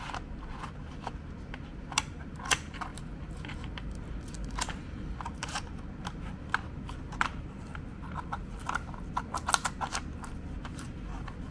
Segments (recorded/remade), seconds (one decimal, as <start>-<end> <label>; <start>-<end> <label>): 0.0-11.5 recorded